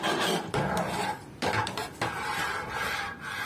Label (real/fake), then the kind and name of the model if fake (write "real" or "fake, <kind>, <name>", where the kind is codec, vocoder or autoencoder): real